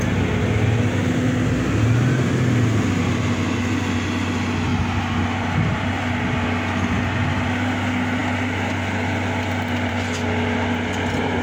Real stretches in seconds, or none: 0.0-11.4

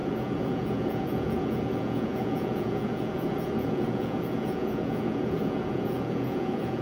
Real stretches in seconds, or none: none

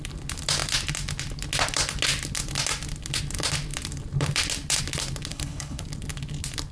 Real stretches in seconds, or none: 0.0-5.3; 5.8-6.7

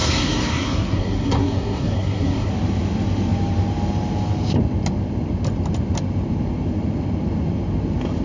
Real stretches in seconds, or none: 2.5-8.2

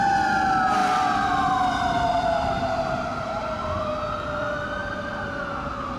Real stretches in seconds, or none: 0.0-0.8; 2.5-3.1; 3.9-4.8; 5.4-6.0